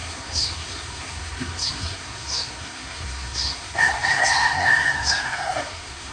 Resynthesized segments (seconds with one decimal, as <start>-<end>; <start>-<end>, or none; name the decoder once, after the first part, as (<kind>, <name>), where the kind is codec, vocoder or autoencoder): 0.0-6.1 (codec, SNAC)